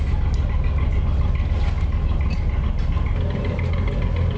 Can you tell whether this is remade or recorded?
recorded